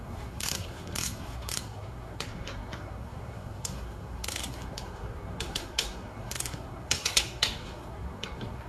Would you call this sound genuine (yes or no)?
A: no